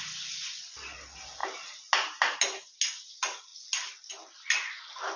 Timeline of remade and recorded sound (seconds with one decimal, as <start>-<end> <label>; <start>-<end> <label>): 0.0-5.2 recorded